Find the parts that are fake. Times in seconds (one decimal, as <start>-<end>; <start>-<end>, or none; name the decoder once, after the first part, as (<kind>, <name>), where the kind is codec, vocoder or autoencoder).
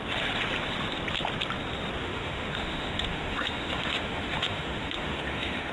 2.0-5.7 (autoencoder, DAC-VAE)